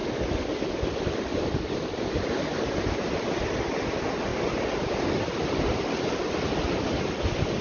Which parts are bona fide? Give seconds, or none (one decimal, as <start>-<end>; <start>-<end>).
0.0-7.6